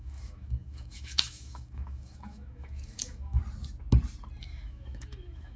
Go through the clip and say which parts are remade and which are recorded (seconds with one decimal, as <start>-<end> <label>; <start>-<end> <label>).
0.0-3.4 remade; 3.4-4.4 recorded; 4.4-5.6 remade